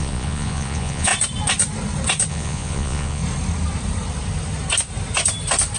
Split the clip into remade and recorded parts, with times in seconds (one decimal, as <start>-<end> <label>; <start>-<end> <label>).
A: 0.0-1.1 remade; 1.1-2.3 recorded; 2.3-3.2 remade; 3.2-5.8 recorded